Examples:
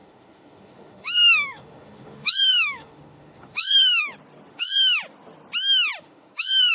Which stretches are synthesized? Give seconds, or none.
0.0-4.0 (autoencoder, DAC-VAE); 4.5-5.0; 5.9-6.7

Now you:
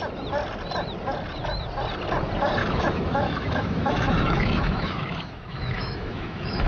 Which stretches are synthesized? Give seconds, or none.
2.6-6.7 (autoencoder, DAC-VAE)